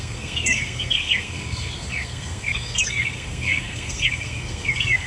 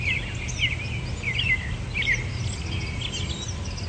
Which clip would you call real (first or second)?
second